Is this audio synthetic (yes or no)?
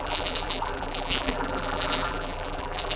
yes